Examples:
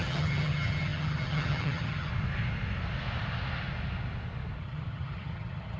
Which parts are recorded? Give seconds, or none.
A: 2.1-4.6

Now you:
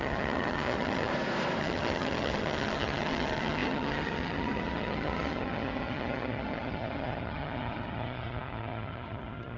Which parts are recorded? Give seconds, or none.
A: 1.1-1.6

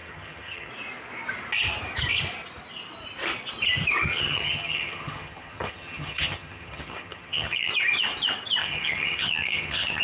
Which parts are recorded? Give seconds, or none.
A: 0.7-4.1; 7.7-8.6